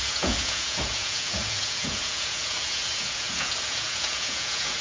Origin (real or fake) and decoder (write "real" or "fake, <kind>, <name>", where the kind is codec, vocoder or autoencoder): fake, vocoder, Vocos